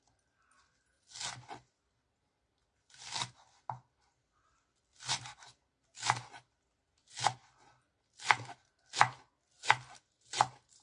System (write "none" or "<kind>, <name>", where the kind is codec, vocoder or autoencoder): none